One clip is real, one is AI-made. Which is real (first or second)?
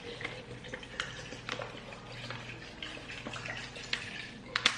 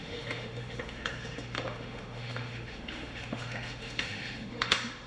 first